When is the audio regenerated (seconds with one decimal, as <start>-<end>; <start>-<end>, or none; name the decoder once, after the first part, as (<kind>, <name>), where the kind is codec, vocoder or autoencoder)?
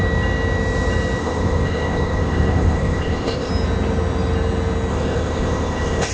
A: 1.2-3.5 (codec, ZipCodec); 4.9-6.1